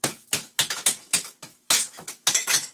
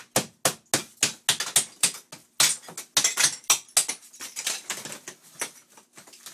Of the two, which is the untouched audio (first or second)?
second